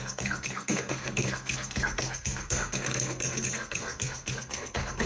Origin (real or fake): fake